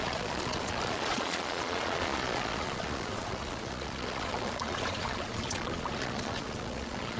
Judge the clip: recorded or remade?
remade